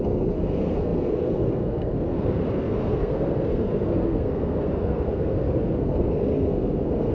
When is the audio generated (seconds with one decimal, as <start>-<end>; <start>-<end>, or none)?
0.0-7.1